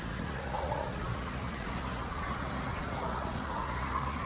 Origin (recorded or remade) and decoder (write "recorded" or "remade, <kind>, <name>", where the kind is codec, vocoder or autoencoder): remade, vocoder, Vocos